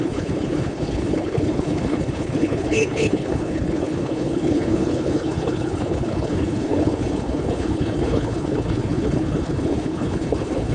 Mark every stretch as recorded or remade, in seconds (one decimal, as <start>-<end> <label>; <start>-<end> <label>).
0.0-10.7 remade